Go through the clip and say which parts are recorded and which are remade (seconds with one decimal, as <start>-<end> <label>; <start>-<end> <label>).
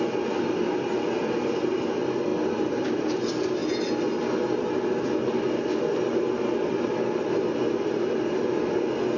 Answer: 0.0-9.2 recorded